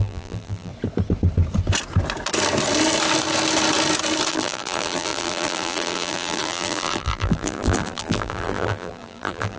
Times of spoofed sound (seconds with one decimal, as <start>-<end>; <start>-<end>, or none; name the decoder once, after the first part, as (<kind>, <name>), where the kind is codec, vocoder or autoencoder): 0.0-0.7 (vocoder, BigVGAN v2); 4.3-9.6